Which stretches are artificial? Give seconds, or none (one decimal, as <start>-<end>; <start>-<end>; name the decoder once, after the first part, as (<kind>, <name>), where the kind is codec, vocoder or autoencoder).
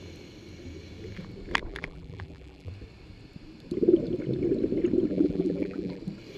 1.7-2.7 (vocoder, BigVGAN v2); 5.1-6.0